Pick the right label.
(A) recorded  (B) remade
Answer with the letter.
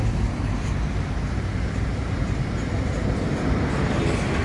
A